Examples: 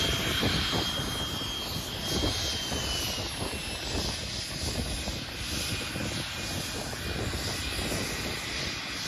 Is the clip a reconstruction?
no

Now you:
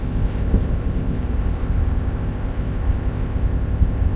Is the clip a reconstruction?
yes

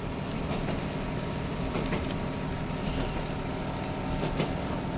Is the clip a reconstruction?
yes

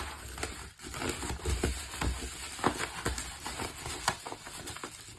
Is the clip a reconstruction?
no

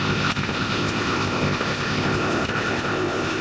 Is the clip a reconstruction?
yes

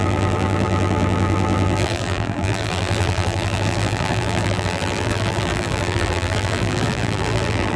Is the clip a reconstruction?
yes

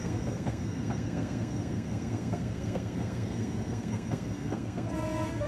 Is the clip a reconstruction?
yes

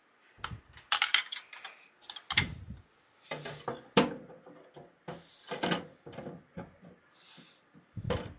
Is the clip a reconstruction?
no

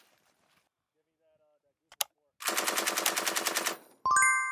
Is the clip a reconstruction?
no